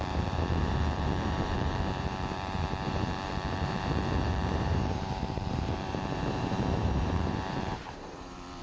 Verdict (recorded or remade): remade